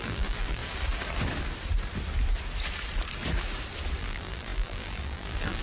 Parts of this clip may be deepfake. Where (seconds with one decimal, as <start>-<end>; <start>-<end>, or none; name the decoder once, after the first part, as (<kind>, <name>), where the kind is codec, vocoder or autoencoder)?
0.0-0.6 (vocoder, BigVGAN v2); 4.0-5.6